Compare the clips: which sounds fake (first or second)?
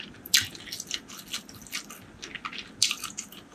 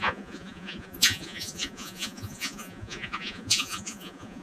second